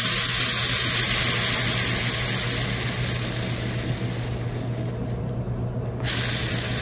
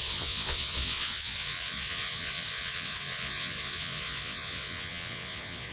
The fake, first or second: second